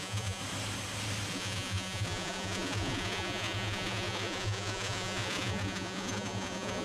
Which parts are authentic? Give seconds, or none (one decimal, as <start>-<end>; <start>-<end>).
0.4-1.3